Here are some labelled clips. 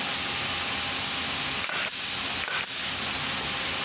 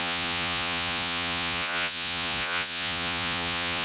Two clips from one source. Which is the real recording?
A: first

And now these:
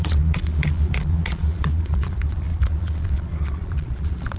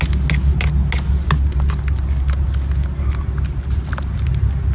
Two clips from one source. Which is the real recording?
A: second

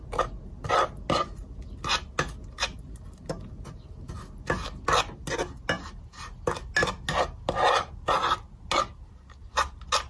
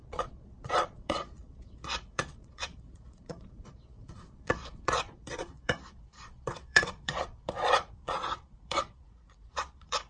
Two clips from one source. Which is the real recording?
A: first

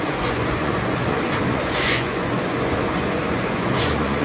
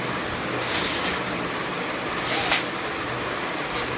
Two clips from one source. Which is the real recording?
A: second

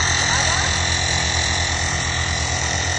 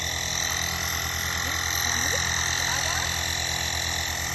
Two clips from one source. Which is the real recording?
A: second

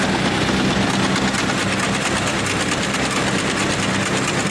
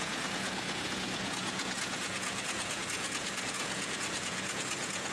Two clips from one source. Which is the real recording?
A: first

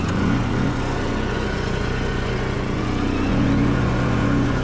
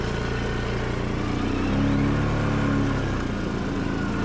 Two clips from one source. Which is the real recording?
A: second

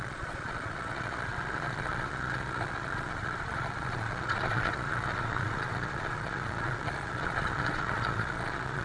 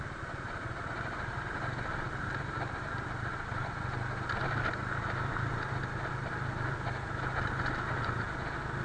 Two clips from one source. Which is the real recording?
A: second